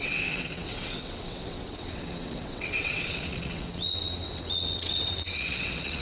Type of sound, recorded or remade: remade